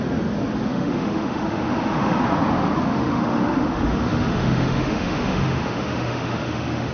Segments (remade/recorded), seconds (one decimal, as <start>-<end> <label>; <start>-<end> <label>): 0.0-0.7 recorded; 0.7-2.2 remade; 2.2-2.9 recorded; 2.9-6.9 remade